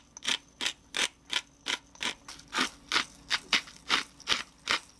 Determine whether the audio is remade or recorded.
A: recorded